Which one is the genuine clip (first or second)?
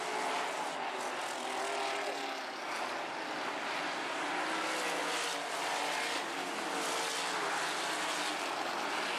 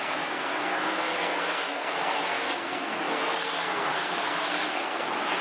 first